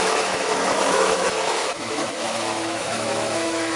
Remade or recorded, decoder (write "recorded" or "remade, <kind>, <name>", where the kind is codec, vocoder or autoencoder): remade, autoencoder, DAC-VAE